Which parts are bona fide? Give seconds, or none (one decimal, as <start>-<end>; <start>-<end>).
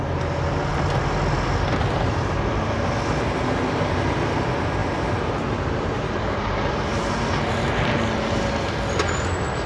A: 0.0-4.8; 6.7-9.7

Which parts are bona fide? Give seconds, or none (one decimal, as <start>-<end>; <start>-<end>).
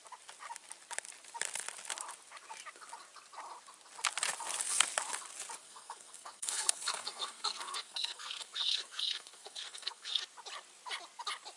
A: 0.0-5.6; 10.2-11.6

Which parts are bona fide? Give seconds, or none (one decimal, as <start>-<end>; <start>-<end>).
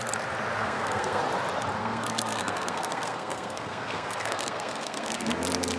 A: 0.0-0.6; 1.2-1.8; 5.3-5.8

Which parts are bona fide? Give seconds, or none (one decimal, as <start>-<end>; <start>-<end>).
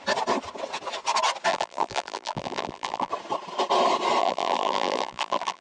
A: 0.0-1.5; 3.1-4.2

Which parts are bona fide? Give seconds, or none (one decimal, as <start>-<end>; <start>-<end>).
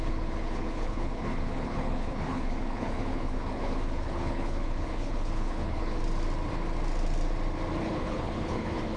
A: 6.0-7.8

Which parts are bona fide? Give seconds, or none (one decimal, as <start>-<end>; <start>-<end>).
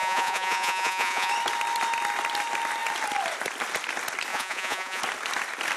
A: 1.3-4.3; 5.0-5.8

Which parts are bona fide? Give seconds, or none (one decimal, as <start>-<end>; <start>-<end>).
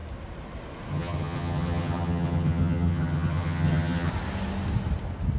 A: 0.0-0.9; 4.1-5.4